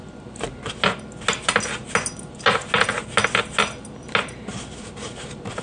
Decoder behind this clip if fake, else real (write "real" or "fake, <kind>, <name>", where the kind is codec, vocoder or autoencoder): real